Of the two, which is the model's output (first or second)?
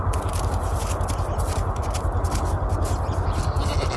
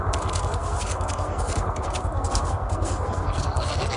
second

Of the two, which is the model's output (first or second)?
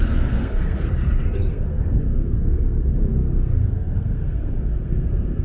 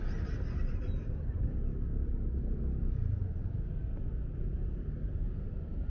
first